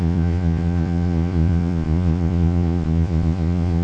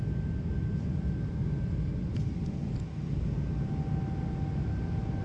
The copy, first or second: first